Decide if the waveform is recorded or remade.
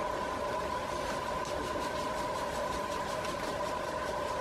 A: recorded